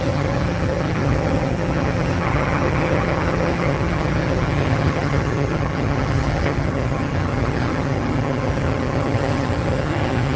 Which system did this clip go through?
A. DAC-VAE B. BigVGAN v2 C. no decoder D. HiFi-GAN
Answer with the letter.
D